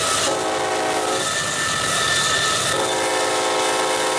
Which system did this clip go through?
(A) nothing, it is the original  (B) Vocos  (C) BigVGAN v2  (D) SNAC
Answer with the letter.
A